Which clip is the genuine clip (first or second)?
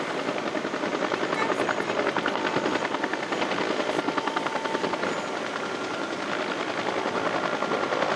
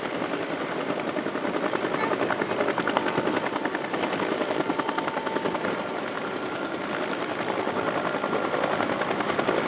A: first